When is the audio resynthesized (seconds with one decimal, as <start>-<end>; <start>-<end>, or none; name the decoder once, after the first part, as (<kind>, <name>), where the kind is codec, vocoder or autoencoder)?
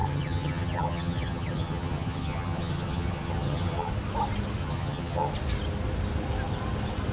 0.0-3.9 (vocoder, HiFi-GAN); 4.6-5.3